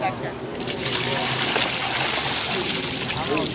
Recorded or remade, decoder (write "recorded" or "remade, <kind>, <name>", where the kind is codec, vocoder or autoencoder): recorded